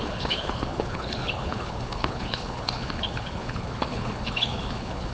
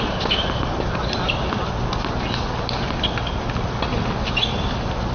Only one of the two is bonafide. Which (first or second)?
second